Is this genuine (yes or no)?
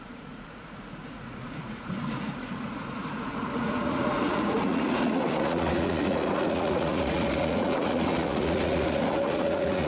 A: no